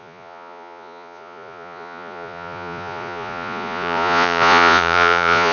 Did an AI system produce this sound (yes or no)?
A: yes